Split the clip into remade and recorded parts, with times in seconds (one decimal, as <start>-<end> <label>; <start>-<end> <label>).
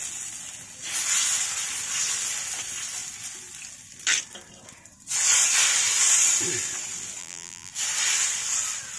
0.0-7.2 recorded; 7.2-7.7 remade; 7.7-9.0 recorded